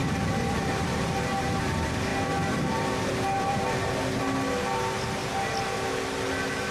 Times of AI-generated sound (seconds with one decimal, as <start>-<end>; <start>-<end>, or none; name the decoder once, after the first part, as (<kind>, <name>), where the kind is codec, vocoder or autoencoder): 0.0-1.1 (vocoder, BigVGAN v2); 2.1-4.2